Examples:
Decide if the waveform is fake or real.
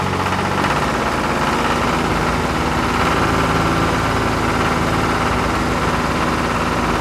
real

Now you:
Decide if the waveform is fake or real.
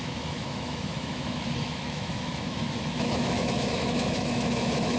fake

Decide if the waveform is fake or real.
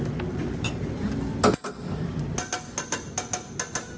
real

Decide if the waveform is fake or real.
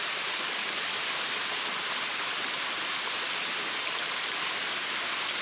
real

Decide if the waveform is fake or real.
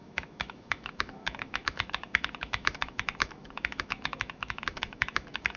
fake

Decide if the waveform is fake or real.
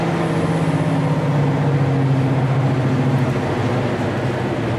real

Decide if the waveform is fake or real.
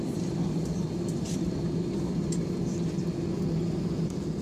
real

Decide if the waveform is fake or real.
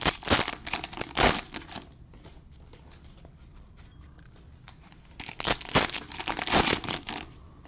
real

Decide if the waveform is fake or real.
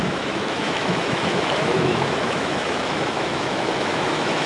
fake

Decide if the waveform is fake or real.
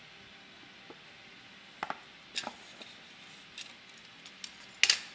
real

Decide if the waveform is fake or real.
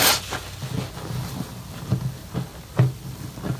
real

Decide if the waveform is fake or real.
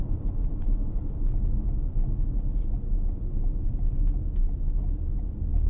real